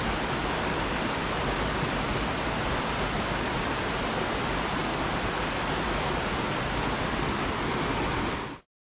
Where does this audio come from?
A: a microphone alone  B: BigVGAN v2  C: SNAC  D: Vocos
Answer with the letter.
A